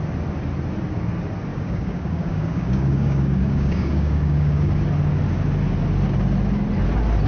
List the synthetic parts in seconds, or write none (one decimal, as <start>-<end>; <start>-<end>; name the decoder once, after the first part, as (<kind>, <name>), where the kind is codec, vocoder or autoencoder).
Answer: 1.5-4.8 (codec, DAC)